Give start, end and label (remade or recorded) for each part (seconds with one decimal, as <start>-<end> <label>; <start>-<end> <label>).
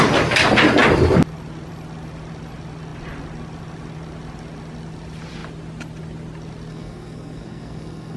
0.0-6.7 recorded; 6.7-8.2 remade